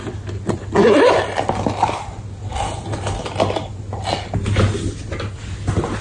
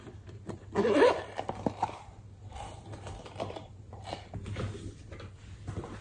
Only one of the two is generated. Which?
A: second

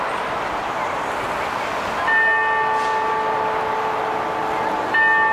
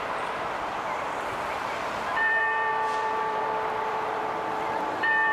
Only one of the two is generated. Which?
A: second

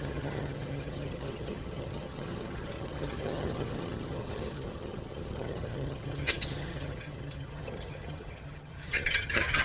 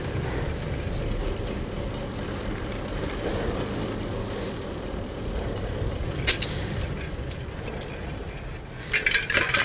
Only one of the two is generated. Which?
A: first